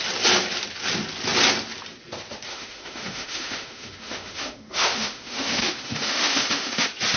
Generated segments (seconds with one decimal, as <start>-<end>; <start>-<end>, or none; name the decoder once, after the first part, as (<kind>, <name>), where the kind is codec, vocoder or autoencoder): 2.5-6.8 (autoencoder, DAC-VAE)

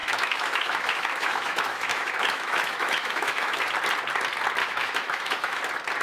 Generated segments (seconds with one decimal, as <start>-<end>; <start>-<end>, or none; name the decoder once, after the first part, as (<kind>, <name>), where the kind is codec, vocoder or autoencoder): 0.0-3.6 (autoencoder, DAC-VAE); 4.6-5.6